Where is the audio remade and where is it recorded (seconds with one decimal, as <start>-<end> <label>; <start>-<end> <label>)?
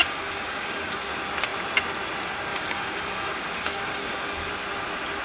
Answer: 0.0-1.1 remade; 1.1-2.5 recorded; 2.5-4.5 remade; 4.5-5.2 recorded